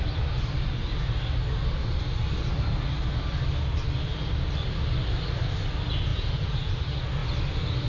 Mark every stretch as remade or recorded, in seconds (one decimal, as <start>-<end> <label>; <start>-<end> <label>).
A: 0.0-6.1 recorded; 6.1-6.7 remade; 6.7-7.9 recorded